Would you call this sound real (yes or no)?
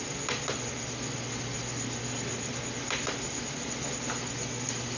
yes